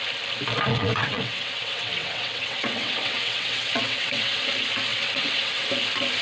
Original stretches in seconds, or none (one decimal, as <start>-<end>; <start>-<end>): 0.0-0.7; 4.4-4.9; 5.7-6.2